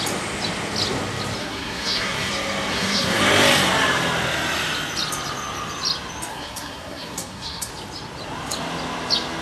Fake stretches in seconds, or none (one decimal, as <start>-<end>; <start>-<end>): 1.4-2.3; 2.7-3.2; 6.3-7.7